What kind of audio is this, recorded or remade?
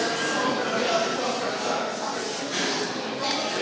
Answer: recorded